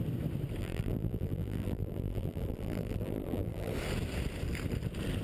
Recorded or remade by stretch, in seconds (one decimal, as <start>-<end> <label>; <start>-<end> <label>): 0.0-0.6 recorded; 0.6-3.7 remade; 3.7-5.2 recorded